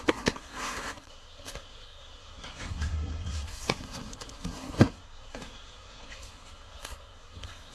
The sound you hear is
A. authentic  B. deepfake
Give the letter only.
B